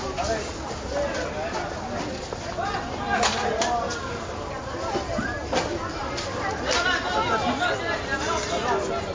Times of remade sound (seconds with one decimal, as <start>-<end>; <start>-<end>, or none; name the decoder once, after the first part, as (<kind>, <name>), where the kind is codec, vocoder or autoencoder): none

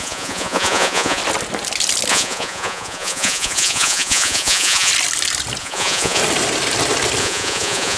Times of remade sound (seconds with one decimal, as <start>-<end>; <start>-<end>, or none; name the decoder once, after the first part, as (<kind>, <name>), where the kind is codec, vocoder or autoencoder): 0.0-1.2 (vocoder, Vocos); 2.1-4.9; 5.6-6.2; 7.2-8.0

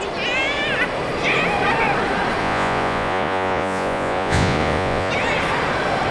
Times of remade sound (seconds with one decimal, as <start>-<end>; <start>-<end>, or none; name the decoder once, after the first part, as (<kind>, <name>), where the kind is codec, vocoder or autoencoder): 2.4-5.1 (vocoder, Vocos)

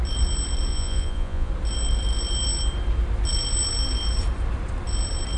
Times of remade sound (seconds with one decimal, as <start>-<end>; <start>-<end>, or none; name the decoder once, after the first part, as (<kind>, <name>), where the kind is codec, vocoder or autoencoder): 0.7-1.5 (vocoder, Vocos)

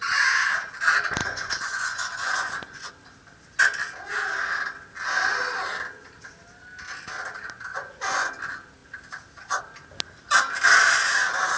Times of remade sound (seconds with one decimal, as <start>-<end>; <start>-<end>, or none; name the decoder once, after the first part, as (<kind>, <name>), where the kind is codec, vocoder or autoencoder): 1.2-2.9 (vocoder, Vocos); 7.7-8.3

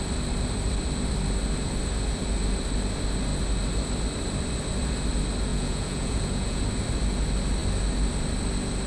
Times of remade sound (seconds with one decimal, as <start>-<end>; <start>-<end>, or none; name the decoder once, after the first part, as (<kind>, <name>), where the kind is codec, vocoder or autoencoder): 5.5-6.6 (vocoder, Vocos)